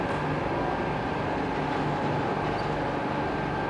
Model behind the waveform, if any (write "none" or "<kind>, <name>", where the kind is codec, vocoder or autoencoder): none